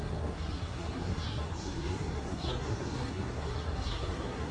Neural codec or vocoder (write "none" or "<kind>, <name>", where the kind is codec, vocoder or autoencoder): codec, SNAC